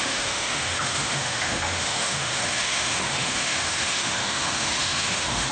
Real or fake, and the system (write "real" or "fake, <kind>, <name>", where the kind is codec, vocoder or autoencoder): fake, autoencoder, DAC-VAE